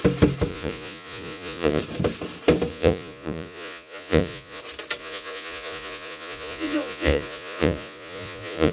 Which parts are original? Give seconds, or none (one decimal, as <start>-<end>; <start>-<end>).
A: 0.0-0.5; 1.8-2.7; 4.6-5.0